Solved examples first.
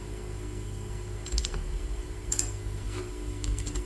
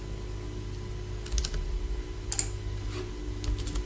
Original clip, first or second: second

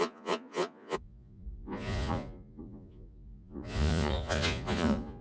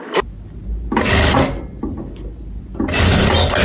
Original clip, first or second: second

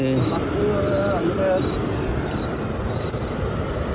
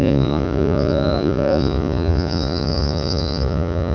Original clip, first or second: first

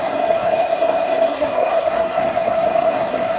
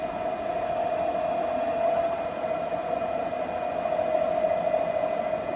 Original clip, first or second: second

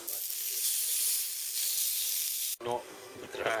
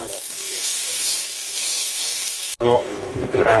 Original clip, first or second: first